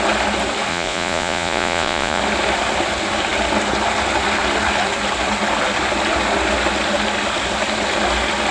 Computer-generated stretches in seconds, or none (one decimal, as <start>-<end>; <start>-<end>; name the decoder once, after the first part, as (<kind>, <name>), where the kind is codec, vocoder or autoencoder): 0.7-2.2 (vocoder, Vocos)